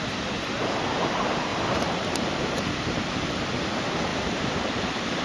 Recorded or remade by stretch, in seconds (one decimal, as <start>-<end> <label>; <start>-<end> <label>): 0.0-1.5 recorded; 1.5-3.4 remade; 3.4-4.1 recorded; 4.1-5.2 remade

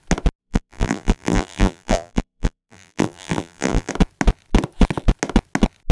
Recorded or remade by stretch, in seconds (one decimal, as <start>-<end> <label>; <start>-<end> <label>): 0.0-0.4 recorded; 0.4-3.9 remade; 3.9-5.9 recorded

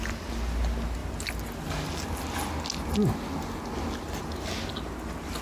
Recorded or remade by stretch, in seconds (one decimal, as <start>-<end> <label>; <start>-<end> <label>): 0.0-5.4 recorded

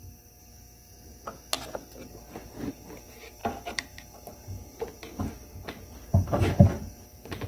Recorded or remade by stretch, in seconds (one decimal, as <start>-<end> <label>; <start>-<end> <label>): 0.0-0.5 remade; 0.5-1.7 recorded; 1.7-7.5 remade

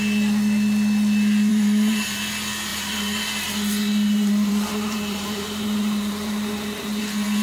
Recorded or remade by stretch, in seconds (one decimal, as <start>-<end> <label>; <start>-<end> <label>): 0.0-1.5 recorded; 1.5-2.3 remade; 2.3-2.7 recorded; 2.7-3.2 remade; 3.2-3.8 recorded; 3.8-7.0 remade; 7.0-7.4 recorded

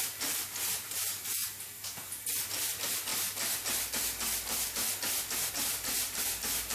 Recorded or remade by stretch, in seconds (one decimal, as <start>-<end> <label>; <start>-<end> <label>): 0.0-6.7 recorded

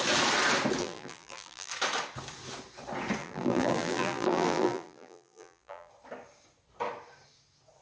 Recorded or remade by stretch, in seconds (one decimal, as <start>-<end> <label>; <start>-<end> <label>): 0.0-0.8 recorded; 0.8-1.7 remade; 1.7-3.2 recorded; 3.2-5.9 remade; 5.9-7.8 recorded

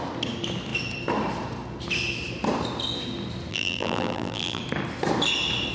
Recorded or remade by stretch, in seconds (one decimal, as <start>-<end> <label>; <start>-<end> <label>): 0.0-3.5 recorded; 3.5-4.6 remade; 4.6-5.7 recorded